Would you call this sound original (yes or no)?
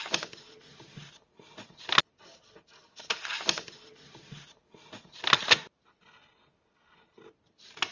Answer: yes